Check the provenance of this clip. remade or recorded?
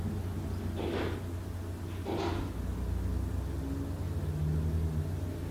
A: recorded